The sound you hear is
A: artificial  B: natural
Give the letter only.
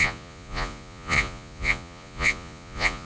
A